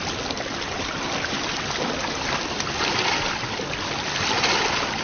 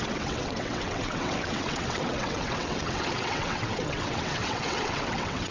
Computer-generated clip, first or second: second